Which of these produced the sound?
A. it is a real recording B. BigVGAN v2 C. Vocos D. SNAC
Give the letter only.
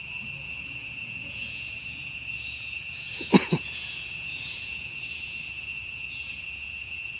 C